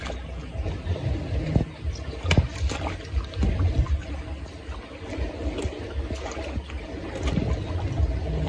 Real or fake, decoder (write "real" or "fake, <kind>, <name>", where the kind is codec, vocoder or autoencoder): real